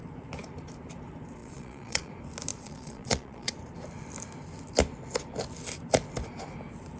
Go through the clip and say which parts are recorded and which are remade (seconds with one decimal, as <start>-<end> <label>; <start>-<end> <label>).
0.0-1.4 recorded; 1.4-2.1 remade; 2.1-2.5 recorded; 2.5-3.5 remade; 3.5-7.0 recorded